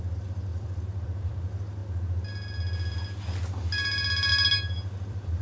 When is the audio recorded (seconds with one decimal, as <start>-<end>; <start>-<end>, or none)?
1.8-4.3